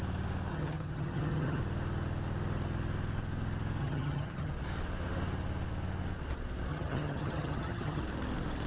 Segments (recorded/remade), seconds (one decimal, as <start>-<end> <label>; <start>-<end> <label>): 0.0-0.5 recorded; 0.5-1.6 remade; 1.6-3.8 recorded; 3.8-4.5 remade; 4.5-6.7 recorded; 6.7-8.0 remade; 8.0-8.7 recorded